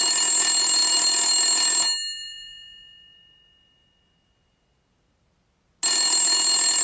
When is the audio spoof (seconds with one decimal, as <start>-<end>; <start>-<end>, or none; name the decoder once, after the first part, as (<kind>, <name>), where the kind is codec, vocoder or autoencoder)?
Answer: none